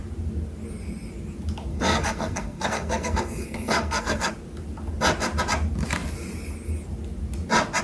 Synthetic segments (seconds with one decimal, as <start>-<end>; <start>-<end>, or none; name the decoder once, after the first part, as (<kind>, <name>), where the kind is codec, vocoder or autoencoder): 1.7-4.3 (codec, SNAC)